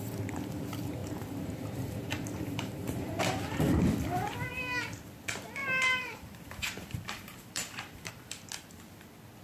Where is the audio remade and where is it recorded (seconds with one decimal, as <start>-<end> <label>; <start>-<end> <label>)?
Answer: 0.0-1.0 recorded; 1.0-3.2 remade; 3.2-5.6 recorded; 5.6-8.1 remade; 8.1-9.4 recorded